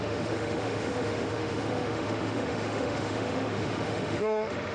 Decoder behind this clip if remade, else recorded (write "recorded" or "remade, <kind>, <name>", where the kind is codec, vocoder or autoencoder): remade, autoencoder, DAC-VAE